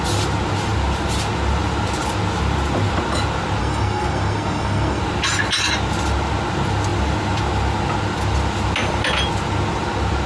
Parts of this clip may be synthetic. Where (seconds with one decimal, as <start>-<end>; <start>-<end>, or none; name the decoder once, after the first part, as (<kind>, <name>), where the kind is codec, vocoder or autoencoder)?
3.6-5.0 (codec, SNAC)